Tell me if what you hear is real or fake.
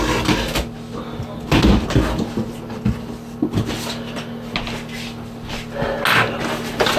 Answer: real